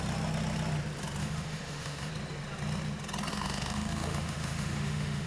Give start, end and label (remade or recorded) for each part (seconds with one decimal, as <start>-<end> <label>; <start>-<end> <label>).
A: 0.0-1.2 recorded; 1.2-2.1 remade; 2.1-3.3 recorded; 3.3-5.3 remade